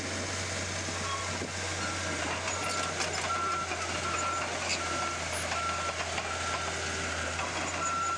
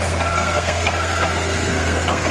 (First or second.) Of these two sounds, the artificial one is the second